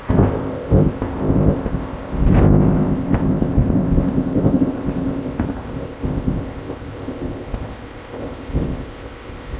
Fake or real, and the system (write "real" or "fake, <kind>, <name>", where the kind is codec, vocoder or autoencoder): fake, codec, ZipCodec